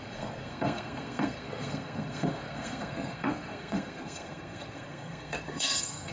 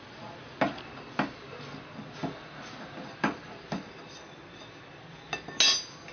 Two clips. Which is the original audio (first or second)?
second